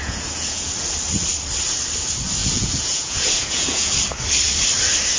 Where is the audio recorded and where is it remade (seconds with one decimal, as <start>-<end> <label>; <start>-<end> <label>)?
0.0-0.7 remade; 0.7-2.4 recorded; 2.4-3.9 remade; 3.9-5.2 recorded